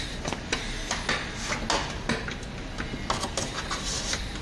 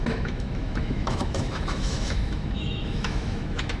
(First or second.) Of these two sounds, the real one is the first